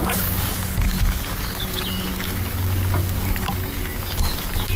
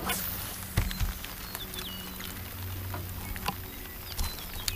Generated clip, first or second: first